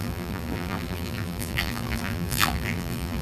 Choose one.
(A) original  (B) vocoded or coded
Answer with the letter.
B